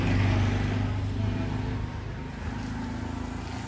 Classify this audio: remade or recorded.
recorded